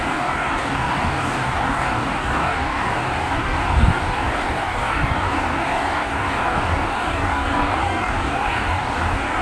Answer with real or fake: fake